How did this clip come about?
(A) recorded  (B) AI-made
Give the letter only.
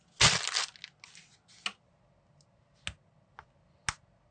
A